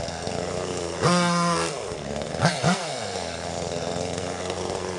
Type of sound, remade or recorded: remade